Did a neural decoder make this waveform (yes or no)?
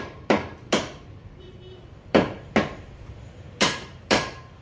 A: yes